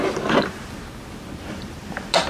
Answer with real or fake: real